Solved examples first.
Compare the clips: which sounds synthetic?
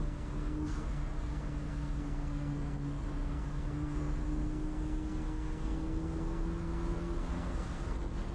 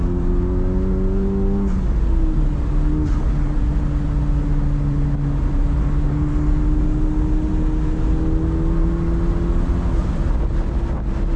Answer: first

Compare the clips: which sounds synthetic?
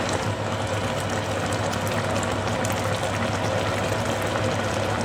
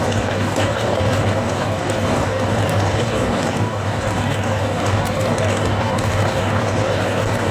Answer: second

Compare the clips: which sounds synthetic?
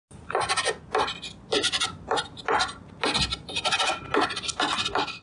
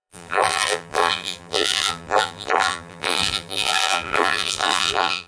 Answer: second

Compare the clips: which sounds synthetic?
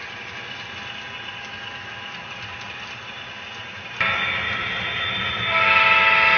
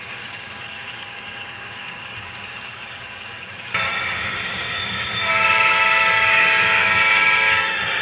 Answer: second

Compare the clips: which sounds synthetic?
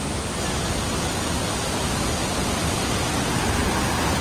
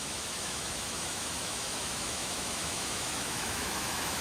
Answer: second